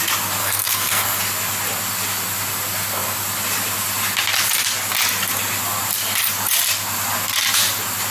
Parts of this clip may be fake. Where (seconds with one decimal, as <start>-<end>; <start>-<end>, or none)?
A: 0.4-1.2